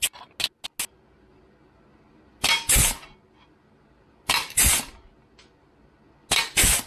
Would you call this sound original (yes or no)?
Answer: yes